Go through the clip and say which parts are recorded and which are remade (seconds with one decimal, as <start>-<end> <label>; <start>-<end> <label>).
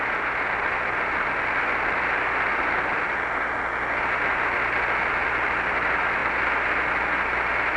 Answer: 0.0-7.8 recorded